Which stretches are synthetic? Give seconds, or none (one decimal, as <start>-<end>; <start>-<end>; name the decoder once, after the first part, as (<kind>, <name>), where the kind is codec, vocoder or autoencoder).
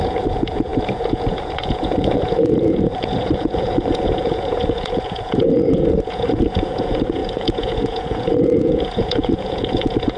0.0-10.2 (vocoder, Vocos)